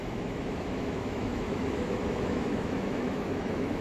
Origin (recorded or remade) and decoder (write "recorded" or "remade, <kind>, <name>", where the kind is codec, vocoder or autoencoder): remade, autoencoder, DAC-VAE